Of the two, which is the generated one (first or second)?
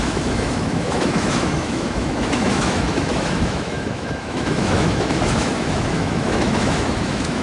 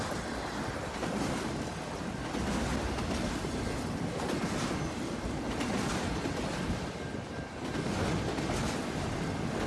first